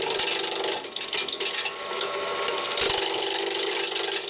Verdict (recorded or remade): recorded